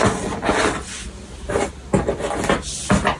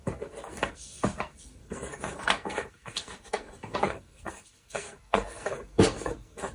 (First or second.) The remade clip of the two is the second